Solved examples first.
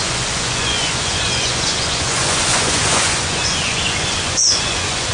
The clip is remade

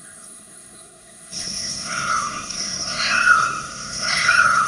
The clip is remade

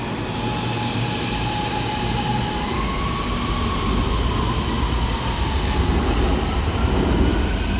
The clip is recorded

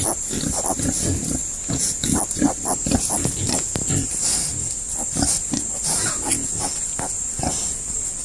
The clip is recorded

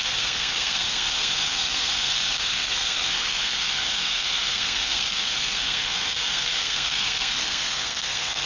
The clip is remade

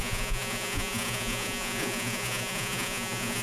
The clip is remade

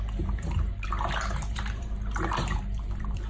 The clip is remade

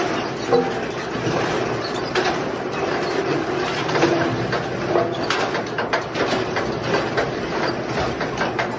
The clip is recorded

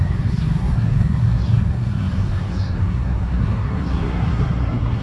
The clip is remade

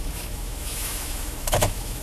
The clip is remade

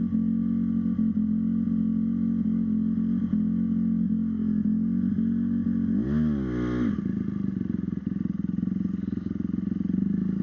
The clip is recorded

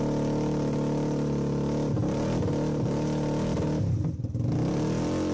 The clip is recorded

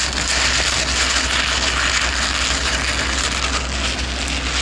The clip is recorded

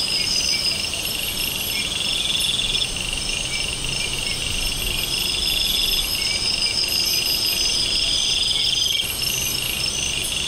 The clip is recorded